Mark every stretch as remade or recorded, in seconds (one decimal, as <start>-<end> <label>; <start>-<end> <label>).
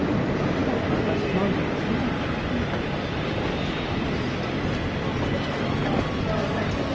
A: 0.0-6.9 recorded